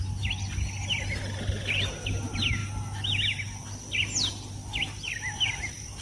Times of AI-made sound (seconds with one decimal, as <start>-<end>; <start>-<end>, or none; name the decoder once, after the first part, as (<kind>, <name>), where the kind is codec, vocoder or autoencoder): none